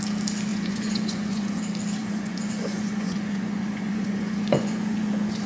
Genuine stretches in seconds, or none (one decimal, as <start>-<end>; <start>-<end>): 0.0-0.5; 1.6-2.0